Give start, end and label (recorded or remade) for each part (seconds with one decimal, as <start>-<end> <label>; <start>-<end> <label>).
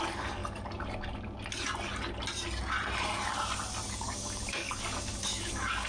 0.0-0.4 remade; 0.4-3.9 recorded; 3.9-5.9 remade